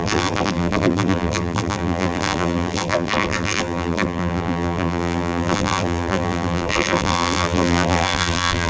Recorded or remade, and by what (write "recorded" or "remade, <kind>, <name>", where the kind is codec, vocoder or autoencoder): remade, vocoder, BigVGAN v2